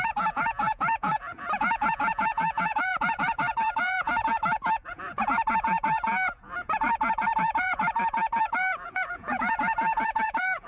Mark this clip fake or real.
fake